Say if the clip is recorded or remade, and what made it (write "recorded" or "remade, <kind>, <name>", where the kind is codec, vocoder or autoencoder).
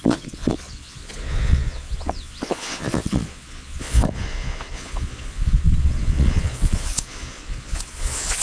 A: remade, vocoder, Vocos